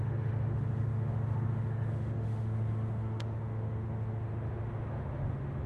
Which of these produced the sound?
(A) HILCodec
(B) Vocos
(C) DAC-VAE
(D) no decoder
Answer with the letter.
C